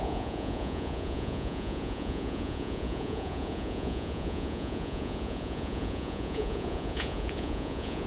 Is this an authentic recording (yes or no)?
no